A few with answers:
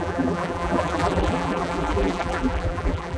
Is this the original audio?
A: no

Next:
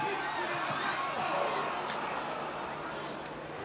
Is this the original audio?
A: yes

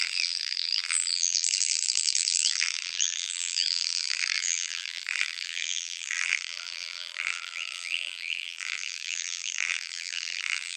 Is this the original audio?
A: no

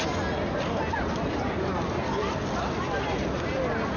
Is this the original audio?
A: yes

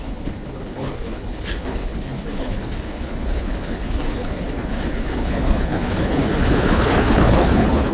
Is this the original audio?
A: no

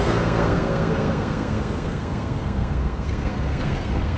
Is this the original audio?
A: no